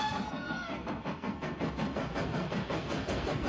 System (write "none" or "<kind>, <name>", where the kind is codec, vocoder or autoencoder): codec, SNAC